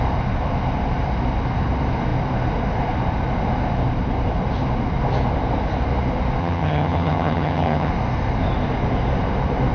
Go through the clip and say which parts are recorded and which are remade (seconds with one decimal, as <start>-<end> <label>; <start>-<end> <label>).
0.0-6.4 recorded; 6.4-7.9 remade; 7.9-9.7 recorded